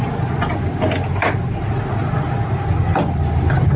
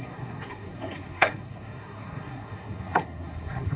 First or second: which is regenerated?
second